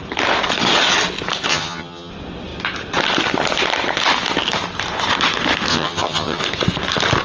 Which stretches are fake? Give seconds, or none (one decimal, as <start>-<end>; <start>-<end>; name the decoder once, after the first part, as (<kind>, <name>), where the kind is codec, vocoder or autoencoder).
1.5-2.1 (vocoder, HiFi-GAN); 5.7-6.4

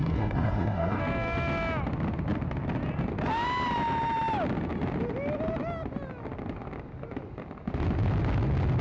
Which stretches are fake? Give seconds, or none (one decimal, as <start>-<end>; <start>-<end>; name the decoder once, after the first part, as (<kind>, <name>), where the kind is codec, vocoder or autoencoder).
0.0-1.0 (codec, SNAC)

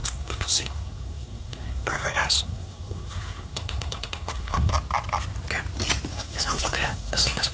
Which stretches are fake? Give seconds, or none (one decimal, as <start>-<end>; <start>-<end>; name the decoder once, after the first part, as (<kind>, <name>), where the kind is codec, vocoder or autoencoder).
0.0-4.7 (codec, SNAC); 6.1-7.5

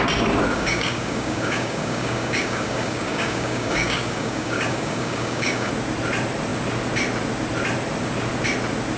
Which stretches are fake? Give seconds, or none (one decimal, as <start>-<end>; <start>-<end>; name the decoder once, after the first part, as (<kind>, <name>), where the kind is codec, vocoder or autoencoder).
0.5-5.7 (codec, DAC)

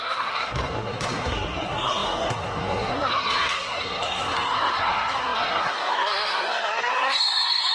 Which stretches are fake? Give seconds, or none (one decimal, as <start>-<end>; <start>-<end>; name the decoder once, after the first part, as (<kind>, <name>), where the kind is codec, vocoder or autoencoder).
0.0-7.7 (codec, SNAC)

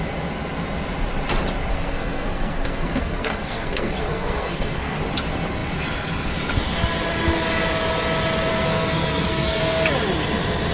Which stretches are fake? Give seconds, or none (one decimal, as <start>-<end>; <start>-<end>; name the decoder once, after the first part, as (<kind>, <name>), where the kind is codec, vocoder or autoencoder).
1.7-5.0 (codec, SNAC); 8.5-9.6